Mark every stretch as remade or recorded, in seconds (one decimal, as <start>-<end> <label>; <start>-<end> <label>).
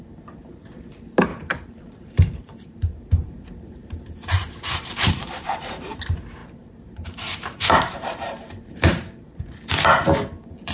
0.0-1.3 recorded; 1.3-6.0 remade; 6.0-6.4 recorded; 6.4-9.4 remade; 9.4-10.7 recorded